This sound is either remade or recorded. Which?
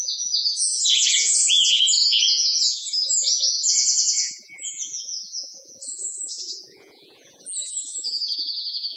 remade